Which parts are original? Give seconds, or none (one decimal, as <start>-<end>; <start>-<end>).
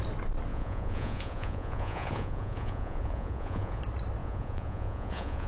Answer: 0.0-0.5; 3.8-4.2